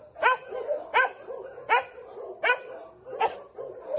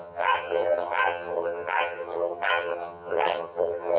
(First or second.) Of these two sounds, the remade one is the second